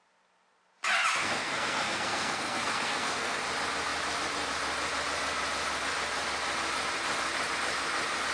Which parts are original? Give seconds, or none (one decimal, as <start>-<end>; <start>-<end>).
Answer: 0.0-1.2; 3.4-8.3